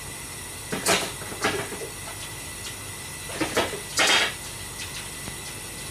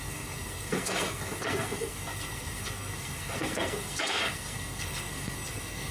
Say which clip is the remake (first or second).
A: second